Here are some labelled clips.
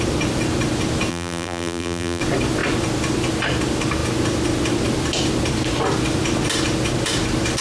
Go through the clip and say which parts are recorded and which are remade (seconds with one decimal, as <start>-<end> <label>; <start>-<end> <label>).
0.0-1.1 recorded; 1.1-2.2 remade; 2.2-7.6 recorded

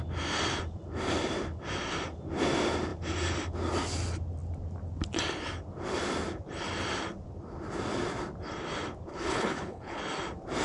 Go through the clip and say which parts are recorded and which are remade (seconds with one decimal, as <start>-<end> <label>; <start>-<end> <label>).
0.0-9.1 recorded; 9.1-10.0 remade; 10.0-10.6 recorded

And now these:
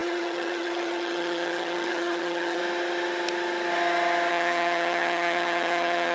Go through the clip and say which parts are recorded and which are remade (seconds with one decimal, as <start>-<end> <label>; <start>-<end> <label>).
0.0-2.6 remade; 2.6-4.3 recorded; 4.3-6.1 remade

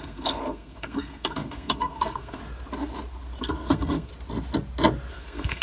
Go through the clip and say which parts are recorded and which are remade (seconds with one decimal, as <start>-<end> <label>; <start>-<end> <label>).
0.0-2.4 remade; 2.4-3.4 recorded; 3.4-4.1 remade; 4.1-5.1 recorded; 5.1-5.6 remade

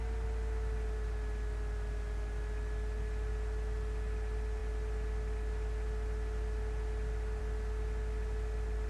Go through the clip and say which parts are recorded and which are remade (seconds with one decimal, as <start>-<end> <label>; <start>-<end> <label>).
0.0-8.9 recorded